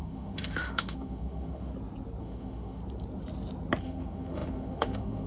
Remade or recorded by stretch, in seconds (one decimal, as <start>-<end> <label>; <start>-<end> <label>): 0.0-1.7 remade; 1.7-2.2 recorded; 2.2-2.8 remade; 2.8-3.8 recorded; 3.8-5.3 remade